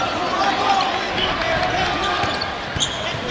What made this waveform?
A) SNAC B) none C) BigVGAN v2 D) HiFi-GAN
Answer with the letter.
B